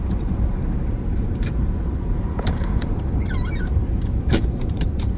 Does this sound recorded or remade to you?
remade